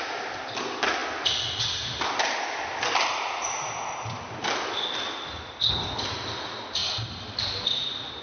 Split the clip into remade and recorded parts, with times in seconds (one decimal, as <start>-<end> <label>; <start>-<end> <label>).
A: 0.0-6.8 recorded; 6.8-8.2 remade